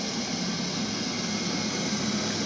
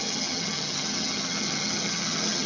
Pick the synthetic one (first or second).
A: second